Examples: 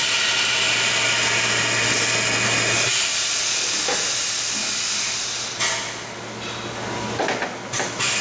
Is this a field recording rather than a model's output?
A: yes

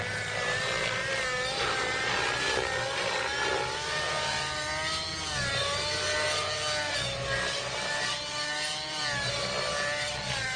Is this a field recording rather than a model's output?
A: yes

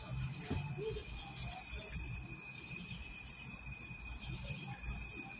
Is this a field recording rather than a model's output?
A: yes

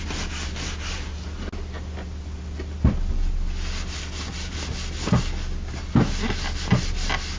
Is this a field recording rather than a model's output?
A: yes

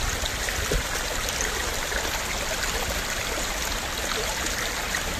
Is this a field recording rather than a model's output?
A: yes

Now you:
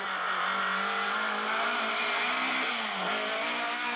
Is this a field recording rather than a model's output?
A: yes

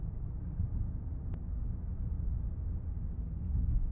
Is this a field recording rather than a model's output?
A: yes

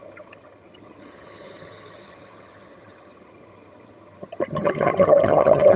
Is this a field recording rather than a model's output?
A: no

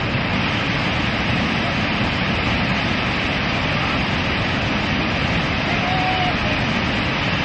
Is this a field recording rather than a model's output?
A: yes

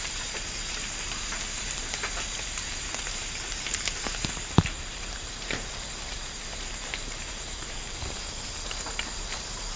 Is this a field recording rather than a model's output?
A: no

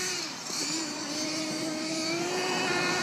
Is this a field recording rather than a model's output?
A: no